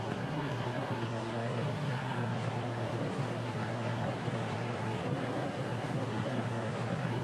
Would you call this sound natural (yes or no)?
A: no